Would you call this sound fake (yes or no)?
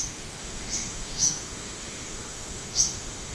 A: yes